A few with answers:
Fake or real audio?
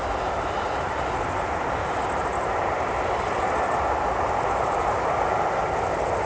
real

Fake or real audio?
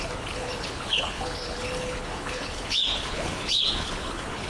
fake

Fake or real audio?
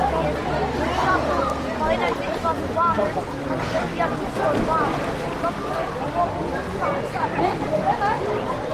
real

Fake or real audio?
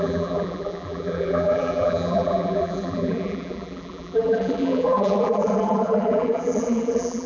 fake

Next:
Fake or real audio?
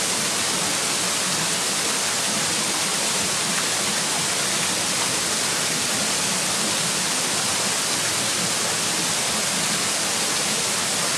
real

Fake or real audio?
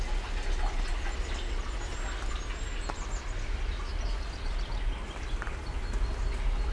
real